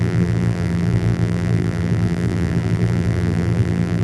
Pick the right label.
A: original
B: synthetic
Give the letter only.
B